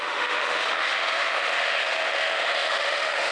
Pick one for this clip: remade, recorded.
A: remade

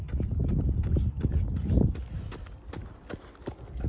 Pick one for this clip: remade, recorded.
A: recorded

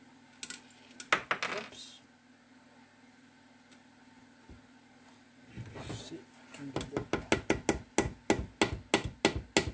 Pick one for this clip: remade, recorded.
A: recorded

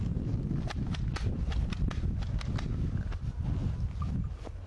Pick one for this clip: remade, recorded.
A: recorded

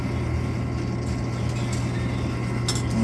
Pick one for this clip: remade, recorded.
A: recorded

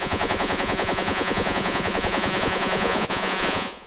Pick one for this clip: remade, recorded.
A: remade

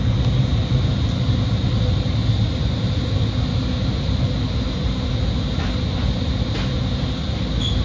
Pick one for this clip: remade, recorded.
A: recorded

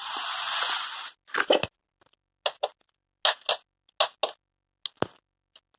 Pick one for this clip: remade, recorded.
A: recorded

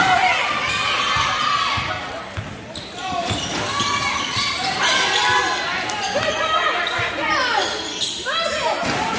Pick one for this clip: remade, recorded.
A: recorded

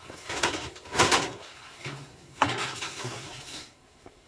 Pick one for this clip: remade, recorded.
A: remade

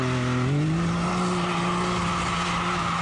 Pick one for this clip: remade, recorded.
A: recorded